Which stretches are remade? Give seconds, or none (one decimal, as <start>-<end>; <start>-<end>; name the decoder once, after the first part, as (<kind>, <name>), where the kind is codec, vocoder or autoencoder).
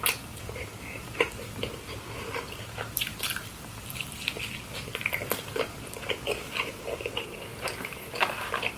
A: 0.0-8.8 (vocoder, BigVGAN v2)